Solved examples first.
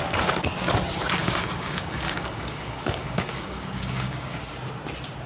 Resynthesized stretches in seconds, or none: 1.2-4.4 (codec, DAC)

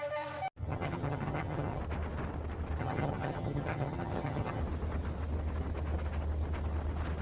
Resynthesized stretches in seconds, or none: 0.6-1.8 (vocoder, HiFi-GAN); 2.8-4.6

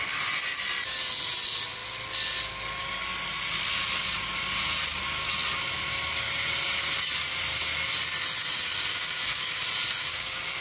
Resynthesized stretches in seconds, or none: 8.9-9.6 (codec, DAC); 10.1-10.6

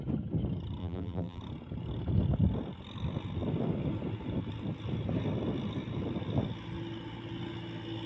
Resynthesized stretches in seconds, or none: 0.8-1.4 (vocoder, BigVGAN v2)

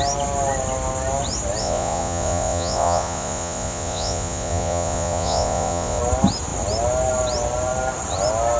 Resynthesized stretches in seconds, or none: 1.6-6.0 (vocoder, Vocos)

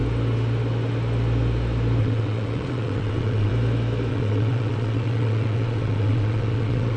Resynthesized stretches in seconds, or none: 2.0-3.5 (vocoder, WaveNeXt); 4.1-7.0

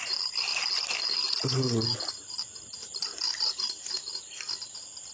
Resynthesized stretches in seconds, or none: none

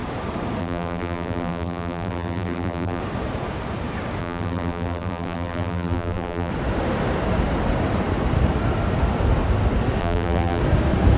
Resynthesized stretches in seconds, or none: 0.6-3.0 (vocoder, BigVGAN v2); 4.2-6.5; 10.0-10.6